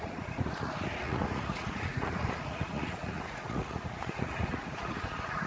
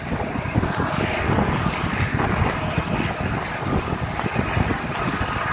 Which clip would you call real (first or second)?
second